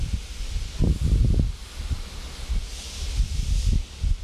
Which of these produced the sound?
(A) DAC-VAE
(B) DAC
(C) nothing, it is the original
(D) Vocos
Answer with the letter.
C